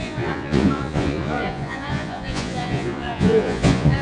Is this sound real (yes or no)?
no